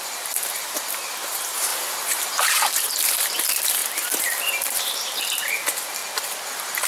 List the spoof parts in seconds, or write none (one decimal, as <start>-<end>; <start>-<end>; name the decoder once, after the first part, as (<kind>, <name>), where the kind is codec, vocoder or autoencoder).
0.0-6.0 (vocoder, BigVGAN v2); 6.5-6.9